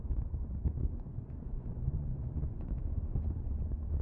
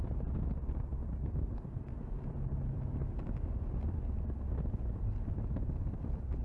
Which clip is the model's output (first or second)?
first